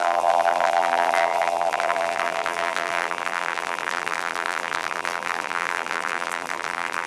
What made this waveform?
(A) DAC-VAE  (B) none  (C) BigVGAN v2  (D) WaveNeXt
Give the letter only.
C